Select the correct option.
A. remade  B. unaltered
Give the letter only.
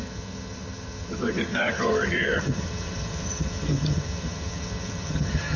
A